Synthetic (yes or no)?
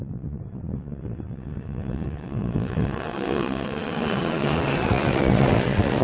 yes